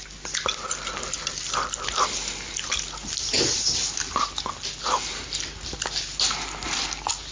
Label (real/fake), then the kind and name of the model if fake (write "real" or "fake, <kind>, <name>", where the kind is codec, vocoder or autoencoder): real